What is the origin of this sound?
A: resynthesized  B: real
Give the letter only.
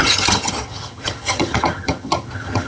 A